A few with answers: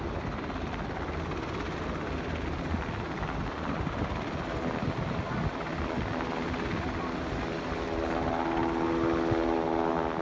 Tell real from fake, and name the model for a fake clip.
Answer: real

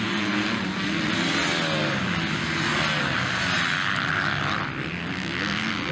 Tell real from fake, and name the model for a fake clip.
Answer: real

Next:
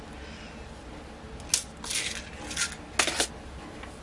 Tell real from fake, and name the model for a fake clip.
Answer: real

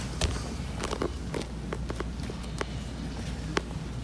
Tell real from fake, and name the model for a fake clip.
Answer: real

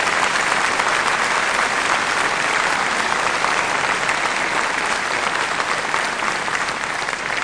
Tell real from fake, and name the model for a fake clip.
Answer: real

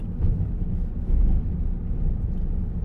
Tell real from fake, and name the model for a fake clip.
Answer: fake, vocoder, BigVGAN v2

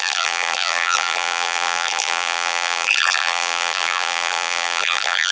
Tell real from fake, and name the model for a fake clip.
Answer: fake, vocoder, BigVGAN v2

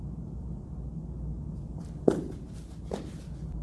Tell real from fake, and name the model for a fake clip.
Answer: real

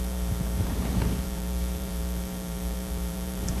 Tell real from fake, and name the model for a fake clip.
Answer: fake, vocoder, BigVGAN v2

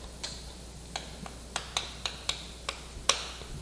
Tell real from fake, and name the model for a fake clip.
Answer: real